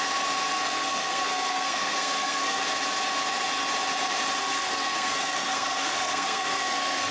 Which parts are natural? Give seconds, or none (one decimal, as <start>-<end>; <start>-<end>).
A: 0.0-0.5; 2.6-4.4